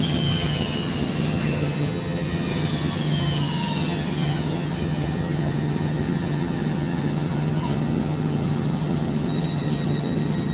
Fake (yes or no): yes